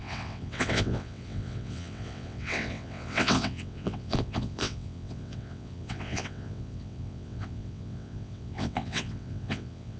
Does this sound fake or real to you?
fake